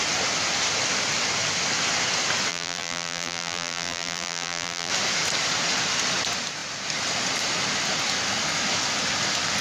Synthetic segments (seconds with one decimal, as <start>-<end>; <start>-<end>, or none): 2.5-4.9